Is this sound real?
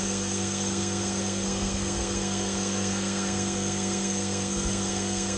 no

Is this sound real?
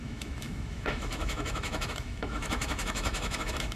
no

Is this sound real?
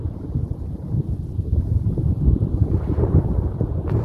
no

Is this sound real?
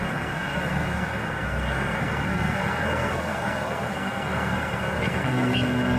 no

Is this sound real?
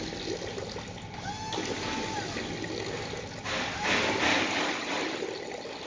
yes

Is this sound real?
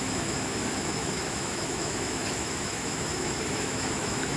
no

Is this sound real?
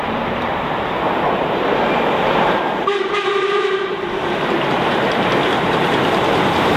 no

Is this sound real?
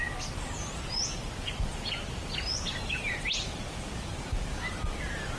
yes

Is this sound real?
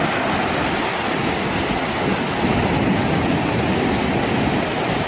yes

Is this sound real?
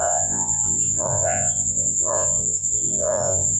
no